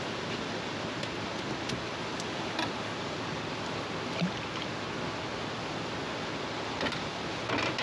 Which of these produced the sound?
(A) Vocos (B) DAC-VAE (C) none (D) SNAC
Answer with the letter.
C